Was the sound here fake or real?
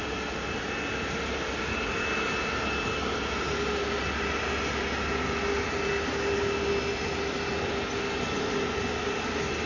real